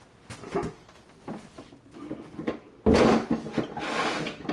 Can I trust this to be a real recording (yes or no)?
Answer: yes